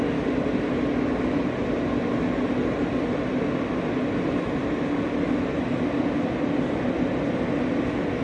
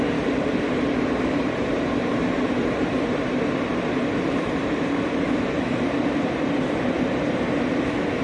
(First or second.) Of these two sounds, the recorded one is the first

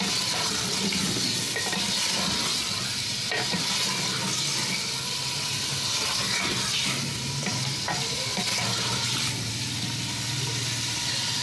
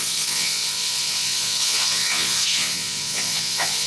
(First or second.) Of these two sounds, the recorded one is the first